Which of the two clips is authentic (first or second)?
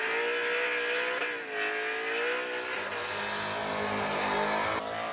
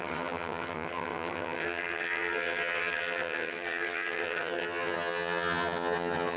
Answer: first